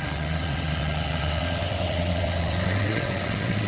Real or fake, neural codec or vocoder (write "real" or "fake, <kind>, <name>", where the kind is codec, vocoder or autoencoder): fake, vocoder, WaveNeXt